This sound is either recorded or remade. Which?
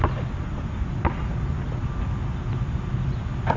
recorded